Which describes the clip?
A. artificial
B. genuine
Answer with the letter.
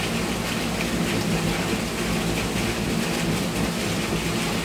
B